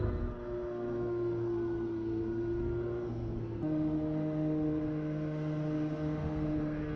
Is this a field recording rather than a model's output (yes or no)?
no